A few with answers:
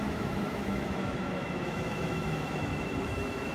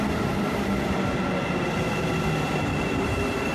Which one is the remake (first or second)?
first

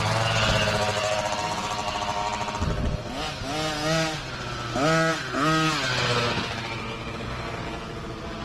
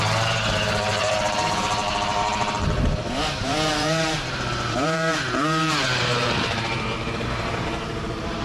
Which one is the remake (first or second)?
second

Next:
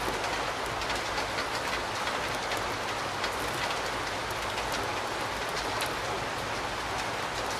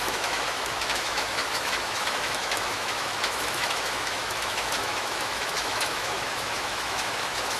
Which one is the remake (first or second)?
second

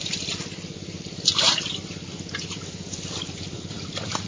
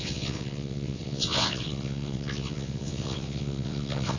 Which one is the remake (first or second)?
second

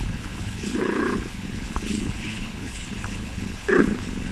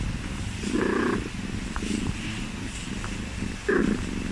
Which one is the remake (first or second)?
first